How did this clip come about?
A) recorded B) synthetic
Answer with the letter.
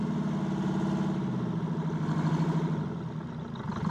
A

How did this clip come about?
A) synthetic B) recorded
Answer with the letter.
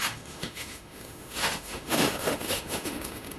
A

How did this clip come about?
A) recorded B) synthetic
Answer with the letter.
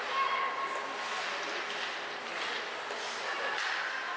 A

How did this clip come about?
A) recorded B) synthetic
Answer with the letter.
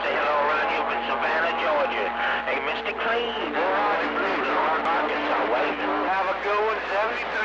A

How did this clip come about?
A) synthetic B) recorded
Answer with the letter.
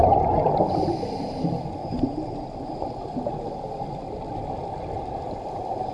B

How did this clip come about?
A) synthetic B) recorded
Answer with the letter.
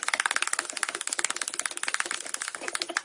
B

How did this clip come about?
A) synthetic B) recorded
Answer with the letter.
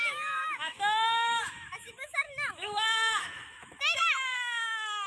A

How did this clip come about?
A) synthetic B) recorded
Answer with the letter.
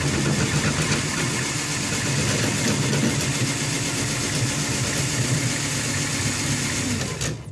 B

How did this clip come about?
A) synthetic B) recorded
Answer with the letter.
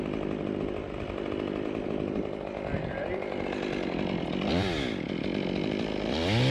B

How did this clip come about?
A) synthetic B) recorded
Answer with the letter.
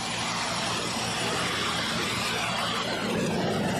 B